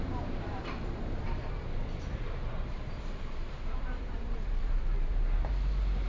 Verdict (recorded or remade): remade